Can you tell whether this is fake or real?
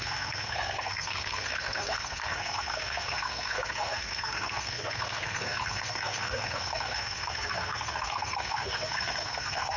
fake